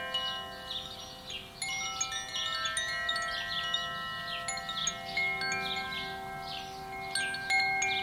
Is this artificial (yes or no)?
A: no